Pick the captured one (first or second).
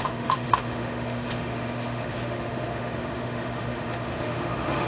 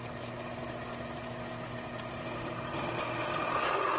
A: second